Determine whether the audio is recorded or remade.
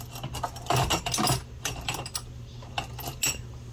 recorded